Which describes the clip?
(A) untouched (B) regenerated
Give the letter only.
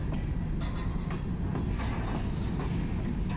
A